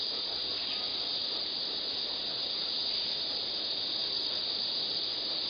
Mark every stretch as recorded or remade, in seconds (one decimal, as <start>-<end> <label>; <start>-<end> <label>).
0.0-0.9 recorded; 0.9-1.4 remade; 1.4-4.0 recorded; 4.0-4.6 remade; 4.6-5.5 recorded